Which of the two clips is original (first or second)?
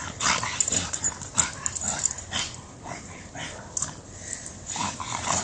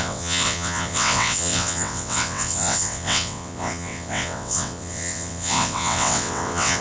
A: first